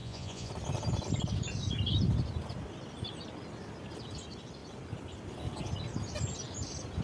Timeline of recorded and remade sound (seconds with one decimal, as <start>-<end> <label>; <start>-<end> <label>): 0.0-0.5 remade; 0.5-7.0 recorded